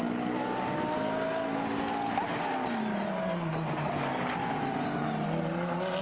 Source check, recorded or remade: recorded